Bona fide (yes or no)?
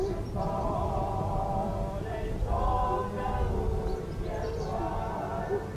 yes